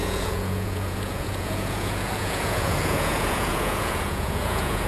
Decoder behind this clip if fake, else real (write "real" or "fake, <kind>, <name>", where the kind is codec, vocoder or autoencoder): fake, vocoder, Vocos